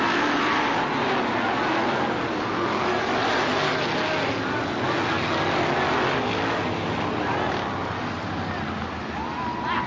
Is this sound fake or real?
real